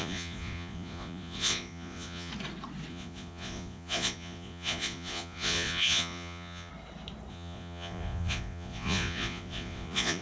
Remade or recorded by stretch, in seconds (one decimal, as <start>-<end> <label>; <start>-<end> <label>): 0.0-2.3 remade; 2.3-2.9 recorded; 2.9-6.7 remade; 6.7-7.3 recorded; 7.3-10.2 remade